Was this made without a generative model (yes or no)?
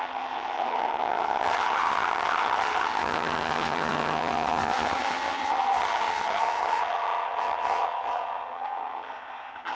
no